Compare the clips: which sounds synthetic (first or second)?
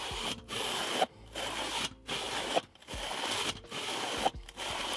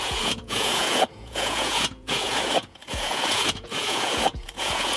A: second